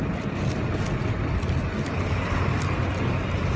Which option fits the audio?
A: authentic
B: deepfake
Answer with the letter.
A